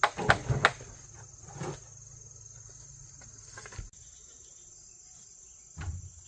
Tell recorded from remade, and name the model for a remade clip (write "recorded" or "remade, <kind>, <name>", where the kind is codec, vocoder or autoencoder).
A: recorded